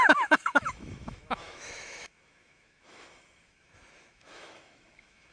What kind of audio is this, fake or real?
fake